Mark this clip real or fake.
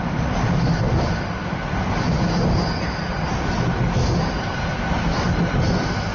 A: real